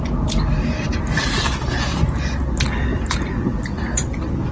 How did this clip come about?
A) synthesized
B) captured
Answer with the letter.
B